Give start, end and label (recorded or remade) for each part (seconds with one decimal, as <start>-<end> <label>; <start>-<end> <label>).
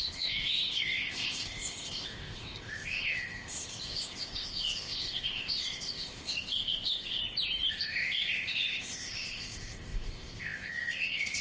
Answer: 0.0-7.2 remade; 7.2-7.7 recorded; 7.7-11.4 remade